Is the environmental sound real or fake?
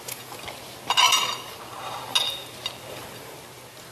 real